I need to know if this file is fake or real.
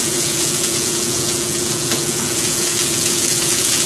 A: fake